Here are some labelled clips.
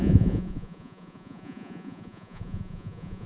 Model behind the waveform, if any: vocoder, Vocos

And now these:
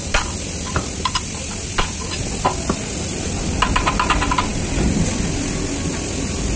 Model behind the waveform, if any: none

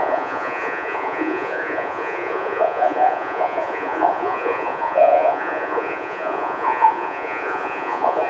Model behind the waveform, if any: vocoder, Vocos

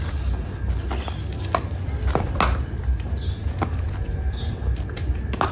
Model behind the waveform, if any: none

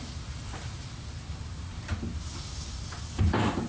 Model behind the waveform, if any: none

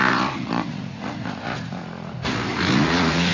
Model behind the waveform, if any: vocoder, Vocos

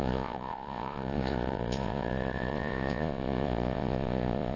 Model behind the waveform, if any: vocoder, Vocos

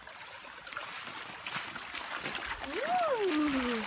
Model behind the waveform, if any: none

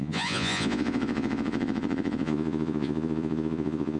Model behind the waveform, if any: vocoder, Vocos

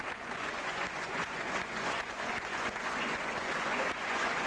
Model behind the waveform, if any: vocoder, Vocos